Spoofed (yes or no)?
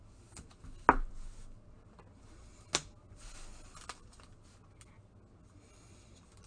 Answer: no